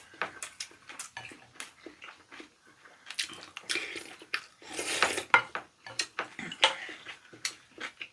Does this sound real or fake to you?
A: real